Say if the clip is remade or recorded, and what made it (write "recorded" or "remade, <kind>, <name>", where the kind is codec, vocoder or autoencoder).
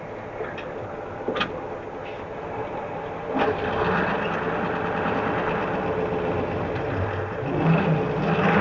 recorded